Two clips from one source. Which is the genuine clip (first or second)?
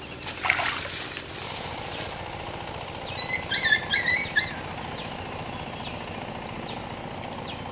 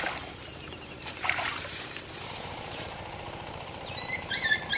first